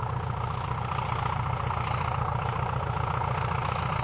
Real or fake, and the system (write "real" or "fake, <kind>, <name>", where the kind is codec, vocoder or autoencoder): real